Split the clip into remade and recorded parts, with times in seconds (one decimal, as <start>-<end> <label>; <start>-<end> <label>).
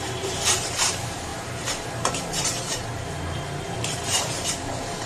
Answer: 0.0-2.8 remade; 2.8-3.9 recorded; 3.9-5.1 remade